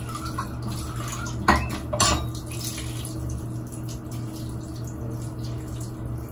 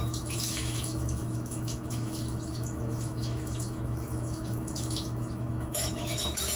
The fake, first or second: second